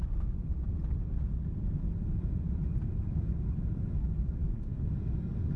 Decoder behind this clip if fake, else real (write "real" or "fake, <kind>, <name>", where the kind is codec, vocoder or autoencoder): real